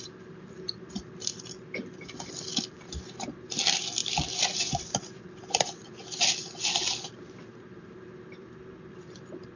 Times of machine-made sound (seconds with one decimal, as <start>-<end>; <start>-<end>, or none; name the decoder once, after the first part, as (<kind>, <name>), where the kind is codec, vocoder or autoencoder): 0.0-5.8 (vocoder, BigVGAN v2); 7.2-9.6